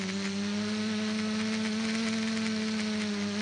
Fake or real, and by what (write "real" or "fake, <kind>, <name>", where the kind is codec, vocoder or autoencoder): real